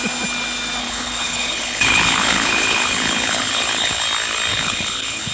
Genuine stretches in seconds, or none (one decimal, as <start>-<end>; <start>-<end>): 0.0-0.8; 4.0-4.5